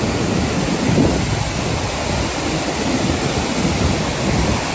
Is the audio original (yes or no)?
yes